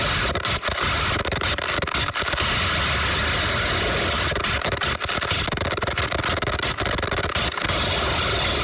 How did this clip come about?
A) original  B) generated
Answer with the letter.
A